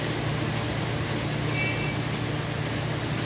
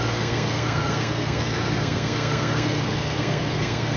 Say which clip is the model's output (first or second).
second